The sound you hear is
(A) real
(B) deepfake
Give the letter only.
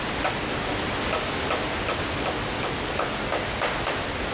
A